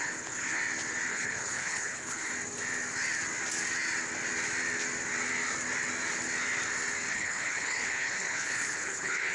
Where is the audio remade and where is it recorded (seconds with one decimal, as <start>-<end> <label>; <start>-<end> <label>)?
0.0-0.6 remade; 0.6-1.1 recorded; 1.1-2.3 remade; 2.3-7.1 recorded; 7.1-9.3 remade